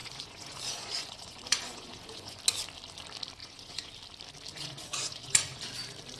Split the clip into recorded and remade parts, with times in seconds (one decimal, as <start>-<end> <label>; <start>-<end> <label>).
0.0-2.4 remade; 2.4-3.4 recorded; 3.4-3.9 remade; 3.9-4.5 recorded; 4.5-5.6 remade; 5.6-6.2 recorded